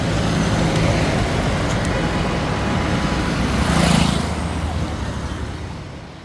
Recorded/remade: recorded